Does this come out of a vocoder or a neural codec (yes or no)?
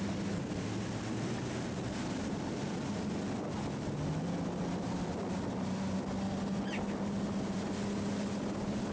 no